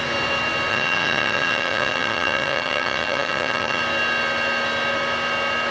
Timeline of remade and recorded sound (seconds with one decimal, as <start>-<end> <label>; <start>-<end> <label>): 0.0-0.7 recorded; 0.7-3.8 remade; 3.8-5.7 recorded